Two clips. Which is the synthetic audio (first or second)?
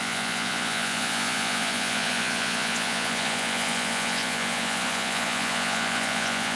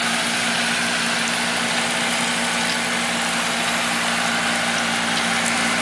first